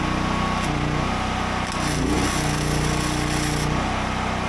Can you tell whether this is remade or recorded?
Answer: recorded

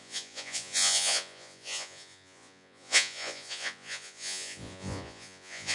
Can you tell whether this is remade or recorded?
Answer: remade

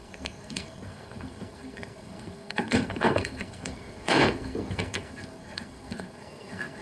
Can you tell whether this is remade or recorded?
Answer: remade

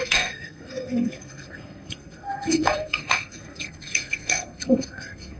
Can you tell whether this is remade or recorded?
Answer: remade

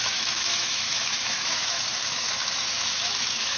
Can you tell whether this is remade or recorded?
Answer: remade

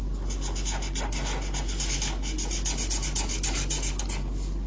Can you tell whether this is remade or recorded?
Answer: recorded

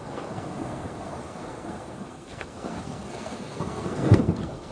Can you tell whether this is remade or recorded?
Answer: remade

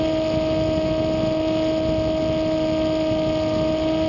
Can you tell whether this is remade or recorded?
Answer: recorded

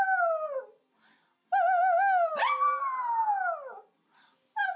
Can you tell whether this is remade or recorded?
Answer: recorded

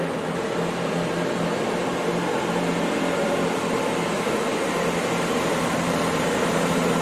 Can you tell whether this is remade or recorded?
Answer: remade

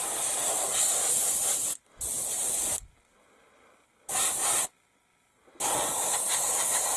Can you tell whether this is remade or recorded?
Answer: recorded